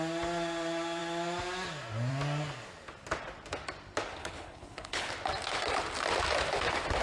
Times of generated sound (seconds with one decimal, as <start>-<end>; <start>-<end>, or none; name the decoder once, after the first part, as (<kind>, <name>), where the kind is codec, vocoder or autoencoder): 4.2-5.1 (codec, HILCodec)